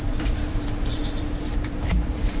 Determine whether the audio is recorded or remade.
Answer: remade